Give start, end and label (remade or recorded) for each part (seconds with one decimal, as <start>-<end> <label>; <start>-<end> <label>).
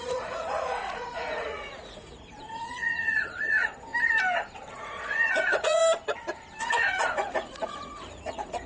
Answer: 0.0-3.9 remade; 3.9-4.7 recorded; 4.7-5.8 remade; 5.8-6.6 recorded; 6.6-8.7 remade